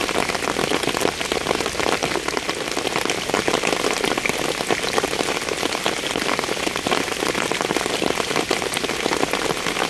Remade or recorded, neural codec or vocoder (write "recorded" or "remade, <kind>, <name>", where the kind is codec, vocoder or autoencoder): recorded